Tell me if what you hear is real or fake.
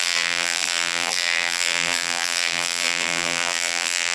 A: fake